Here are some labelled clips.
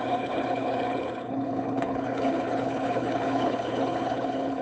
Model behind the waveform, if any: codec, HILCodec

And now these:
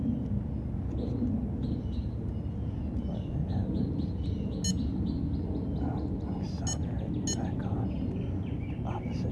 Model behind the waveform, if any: none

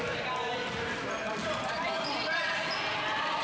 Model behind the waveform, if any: none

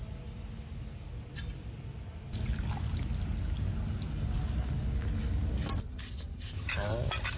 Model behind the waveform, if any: none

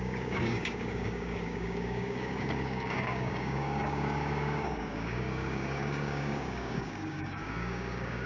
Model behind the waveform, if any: codec, DAC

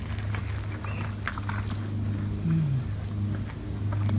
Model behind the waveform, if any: none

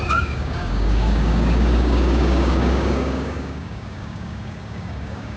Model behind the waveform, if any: codec, DAC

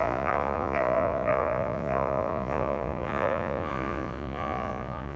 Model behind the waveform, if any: vocoder, Vocos